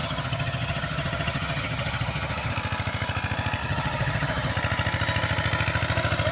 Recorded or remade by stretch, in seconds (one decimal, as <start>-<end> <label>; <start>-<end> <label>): 0.0-2.5 remade; 2.5-3.6 recorded; 3.6-4.5 remade; 4.5-6.3 recorded